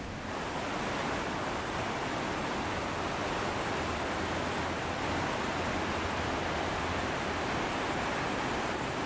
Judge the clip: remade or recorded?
recorded